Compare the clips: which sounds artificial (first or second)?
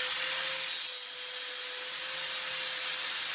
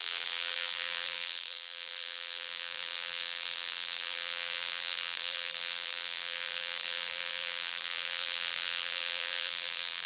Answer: second